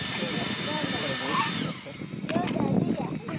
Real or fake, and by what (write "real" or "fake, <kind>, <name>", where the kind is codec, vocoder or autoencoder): fake, vocoder, BigVGAN v2